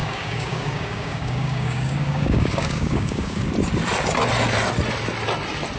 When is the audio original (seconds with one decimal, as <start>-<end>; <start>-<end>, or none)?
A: 3.5-5.8

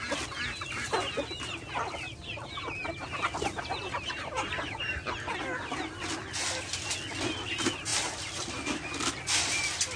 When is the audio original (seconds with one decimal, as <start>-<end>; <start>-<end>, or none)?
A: 0.0-10.0

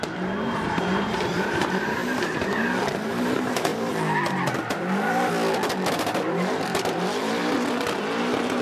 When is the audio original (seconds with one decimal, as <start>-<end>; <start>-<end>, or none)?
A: 2.0-3.0; 3.7-5.9; 7.4-8.2

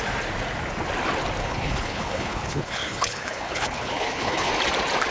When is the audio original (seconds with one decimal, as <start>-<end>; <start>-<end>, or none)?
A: 0.0-1.4; 4.5-5.1

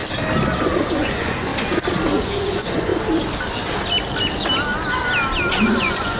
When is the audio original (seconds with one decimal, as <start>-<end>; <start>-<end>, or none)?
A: 0.0-0.9; 1.5-2.2; 2.9-5.5